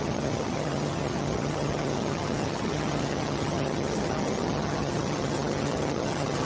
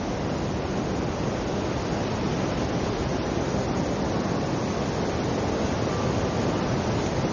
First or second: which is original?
second